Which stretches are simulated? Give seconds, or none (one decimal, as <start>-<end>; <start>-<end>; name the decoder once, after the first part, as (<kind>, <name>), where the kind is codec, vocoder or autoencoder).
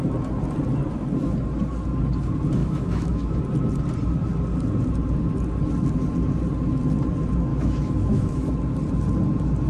2.6-3.4 (autoencoder, DAC-VAE); 7.5-8.5